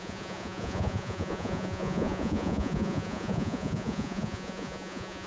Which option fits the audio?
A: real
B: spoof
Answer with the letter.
B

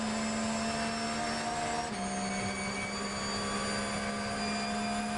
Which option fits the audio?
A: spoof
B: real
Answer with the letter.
B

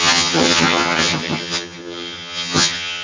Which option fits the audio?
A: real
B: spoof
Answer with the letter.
B